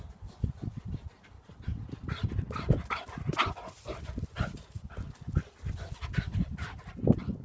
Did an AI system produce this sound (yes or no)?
no